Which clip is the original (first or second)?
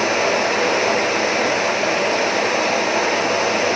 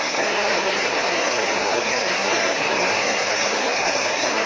first